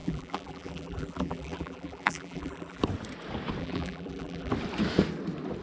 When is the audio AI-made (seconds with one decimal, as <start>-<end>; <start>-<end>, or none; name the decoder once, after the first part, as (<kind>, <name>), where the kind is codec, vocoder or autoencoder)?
0.0-2.8 (vocoder, BigVGAN v2); 3.6-4.5